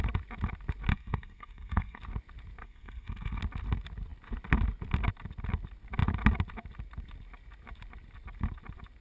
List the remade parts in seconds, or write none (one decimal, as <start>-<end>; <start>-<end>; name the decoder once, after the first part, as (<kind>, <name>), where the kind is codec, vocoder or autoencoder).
0.9-2.0 (codec, SNAC); 2.6-3.4